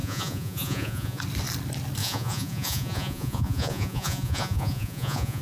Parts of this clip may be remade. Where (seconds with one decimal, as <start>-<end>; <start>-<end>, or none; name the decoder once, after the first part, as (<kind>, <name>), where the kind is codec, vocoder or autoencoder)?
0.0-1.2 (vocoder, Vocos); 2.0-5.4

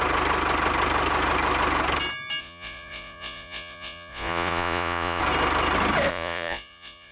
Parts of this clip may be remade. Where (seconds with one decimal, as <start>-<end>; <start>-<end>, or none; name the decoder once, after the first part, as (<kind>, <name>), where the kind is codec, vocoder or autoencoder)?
2.4-5.2 (vocoder, Vocos); 6.1-7.1

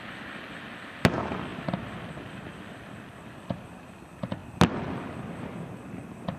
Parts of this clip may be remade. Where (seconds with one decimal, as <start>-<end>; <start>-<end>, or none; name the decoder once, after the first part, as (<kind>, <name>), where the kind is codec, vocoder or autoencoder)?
1.5-3.9 (vocoder, BigVGAN v2)

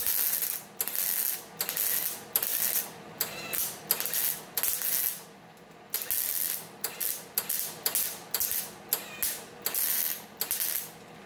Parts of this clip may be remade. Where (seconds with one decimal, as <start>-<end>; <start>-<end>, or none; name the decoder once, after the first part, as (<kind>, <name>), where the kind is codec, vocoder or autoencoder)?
none

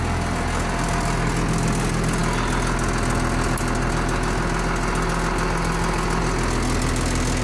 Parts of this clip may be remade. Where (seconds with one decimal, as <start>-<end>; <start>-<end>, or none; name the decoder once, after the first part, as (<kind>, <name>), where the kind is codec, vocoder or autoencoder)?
none

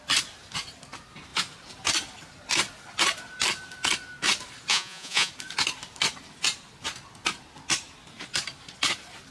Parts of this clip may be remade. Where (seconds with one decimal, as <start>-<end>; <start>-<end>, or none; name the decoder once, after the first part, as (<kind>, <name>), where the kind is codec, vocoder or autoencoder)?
4.7-5.3 (vocoder, Vocos)

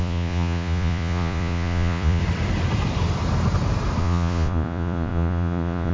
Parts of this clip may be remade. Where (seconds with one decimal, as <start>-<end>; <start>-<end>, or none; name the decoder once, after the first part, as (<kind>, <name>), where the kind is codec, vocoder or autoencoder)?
0.0-2.2 (vocoder, Vocos); 4.0-5.9